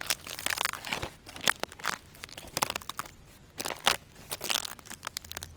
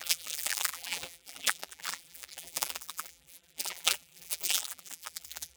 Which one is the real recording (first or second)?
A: first